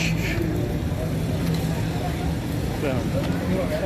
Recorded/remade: recorded